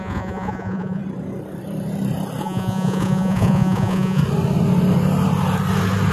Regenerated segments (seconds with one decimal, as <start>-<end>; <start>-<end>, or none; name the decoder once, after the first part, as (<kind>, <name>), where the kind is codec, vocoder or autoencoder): 0.0-1.0 (vocoder, Vocos); 2.4-4.2